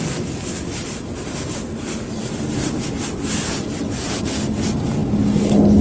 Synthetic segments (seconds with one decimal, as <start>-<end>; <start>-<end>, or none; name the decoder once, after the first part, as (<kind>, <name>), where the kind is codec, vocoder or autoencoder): none